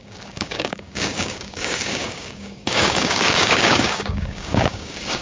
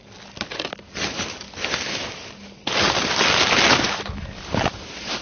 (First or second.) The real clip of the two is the second